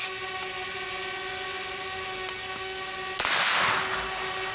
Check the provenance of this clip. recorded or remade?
recorded